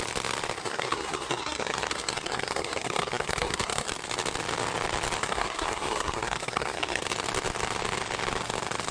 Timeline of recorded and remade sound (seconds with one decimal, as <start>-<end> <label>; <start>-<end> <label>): 0.0-0.6 recorded; 0.6-3.9 remade; 3.9-5.2 recorded; 5.2-7.0 remade; 7.0-8.9 recorded